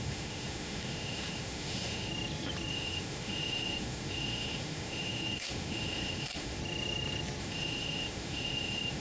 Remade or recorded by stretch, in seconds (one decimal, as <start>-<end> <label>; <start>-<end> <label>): 0.0-2.1 remade; 2.1-2.7 recorded; 2.7-6.6 remade; 6.6-7.4 recorded; 7.4-9.0 remade